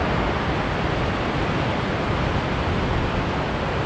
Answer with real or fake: real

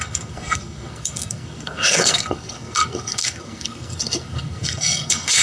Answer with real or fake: fake